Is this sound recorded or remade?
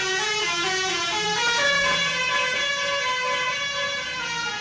remade